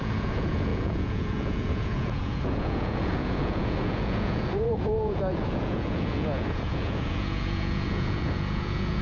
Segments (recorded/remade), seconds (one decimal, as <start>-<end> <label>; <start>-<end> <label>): 0.0-9.0 remade